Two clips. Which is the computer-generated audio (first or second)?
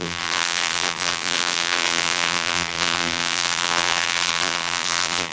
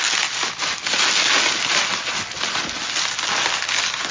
first